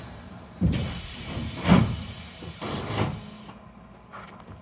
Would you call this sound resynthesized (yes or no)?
no